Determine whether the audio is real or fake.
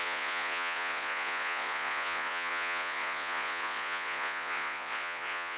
fake